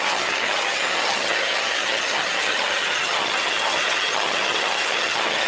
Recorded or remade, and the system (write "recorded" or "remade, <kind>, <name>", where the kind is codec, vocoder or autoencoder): remade, vocoder, HiFi-GAN